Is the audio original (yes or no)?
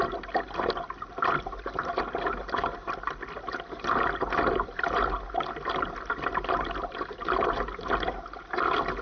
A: yes